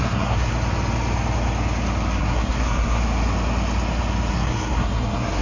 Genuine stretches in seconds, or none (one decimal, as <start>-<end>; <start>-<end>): 0.5-2.2; 3.0-4.3